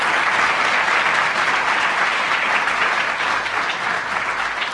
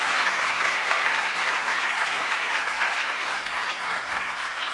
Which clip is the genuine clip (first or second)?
first